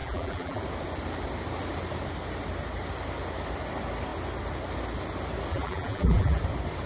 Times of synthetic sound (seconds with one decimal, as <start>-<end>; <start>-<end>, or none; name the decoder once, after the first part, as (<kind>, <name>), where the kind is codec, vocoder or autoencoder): 0.0-0.6 (vocoder, BigVGAN v2); 5.5-6.4